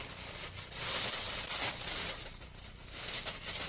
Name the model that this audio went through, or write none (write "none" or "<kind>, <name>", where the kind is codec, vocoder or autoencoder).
none